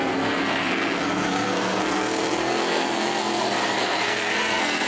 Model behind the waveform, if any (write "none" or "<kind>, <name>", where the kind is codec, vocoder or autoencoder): codec, SNAC